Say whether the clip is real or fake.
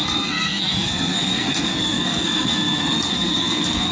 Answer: fake